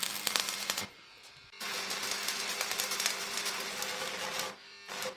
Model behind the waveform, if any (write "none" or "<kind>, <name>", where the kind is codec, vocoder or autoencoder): none